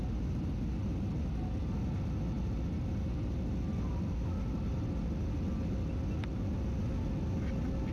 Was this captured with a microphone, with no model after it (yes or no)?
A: yes